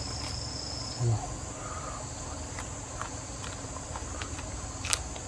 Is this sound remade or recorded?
recorded